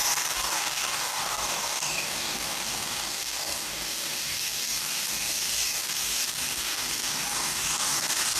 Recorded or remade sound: remade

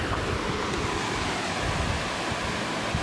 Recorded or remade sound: recorded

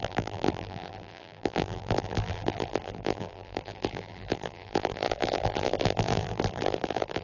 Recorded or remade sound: remade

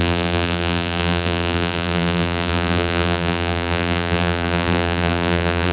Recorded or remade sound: remade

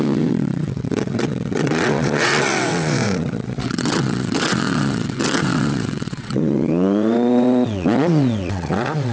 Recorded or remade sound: remade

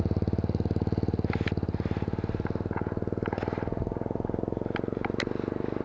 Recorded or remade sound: recorded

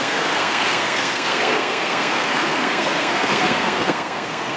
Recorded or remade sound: remade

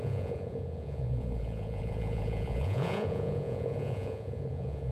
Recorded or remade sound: remade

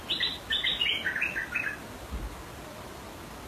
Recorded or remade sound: recorded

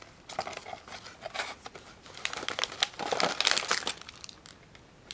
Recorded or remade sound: recorded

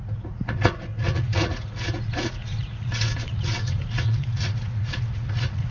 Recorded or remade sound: remade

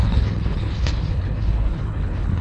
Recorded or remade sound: remade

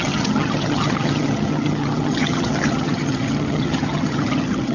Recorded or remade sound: remade